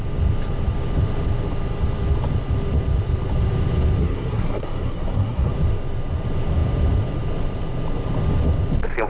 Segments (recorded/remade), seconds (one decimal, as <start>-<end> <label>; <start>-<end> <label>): 0.0-4.0 recorded; 4.0-5.5 remade; 5.5-9.1 recorded